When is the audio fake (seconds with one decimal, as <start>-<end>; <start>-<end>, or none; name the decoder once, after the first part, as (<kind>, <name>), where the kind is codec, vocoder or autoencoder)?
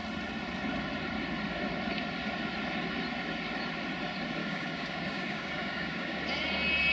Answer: 4.4-6.2 (codec, DAC)